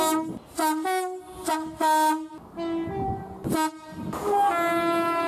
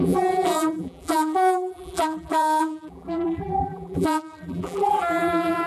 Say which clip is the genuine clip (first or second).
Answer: first